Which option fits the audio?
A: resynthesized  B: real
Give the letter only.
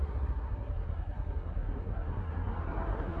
A